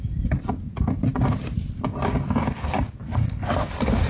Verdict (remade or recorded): recorded